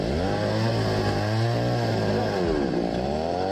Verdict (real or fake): real